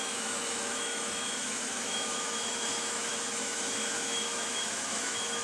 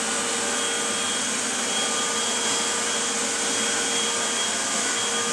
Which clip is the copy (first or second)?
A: first